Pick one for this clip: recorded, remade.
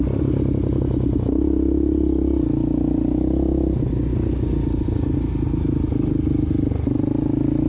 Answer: recorded